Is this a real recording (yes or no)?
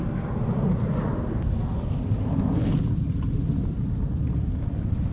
yes